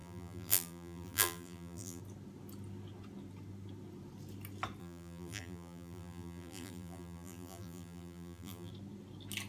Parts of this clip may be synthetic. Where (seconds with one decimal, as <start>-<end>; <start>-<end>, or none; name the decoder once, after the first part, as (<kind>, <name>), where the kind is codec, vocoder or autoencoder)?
0.0-2.0 (vocoder, BigVGAN v2); 4.8-8.7